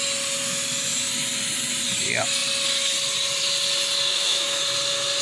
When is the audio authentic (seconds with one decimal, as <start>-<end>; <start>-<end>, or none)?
0.0-4.1; 4.6-5.2